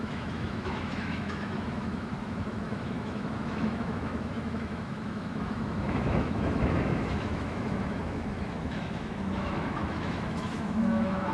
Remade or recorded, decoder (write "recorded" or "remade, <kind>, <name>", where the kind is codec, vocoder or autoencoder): remade, autoencoder, DAC-VAE